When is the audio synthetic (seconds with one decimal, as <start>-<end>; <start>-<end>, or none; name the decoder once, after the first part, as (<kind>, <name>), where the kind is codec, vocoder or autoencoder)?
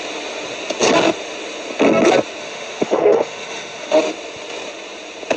2.4-4.0 (autoencoder, DAC-VAE)